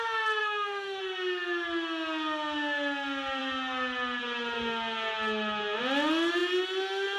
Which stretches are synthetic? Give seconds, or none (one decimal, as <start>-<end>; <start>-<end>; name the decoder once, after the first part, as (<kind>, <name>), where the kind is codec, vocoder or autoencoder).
0.4-1.0 (autoencoder, DAC-VAE)